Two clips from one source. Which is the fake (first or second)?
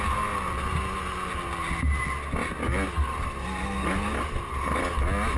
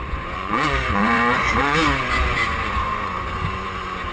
second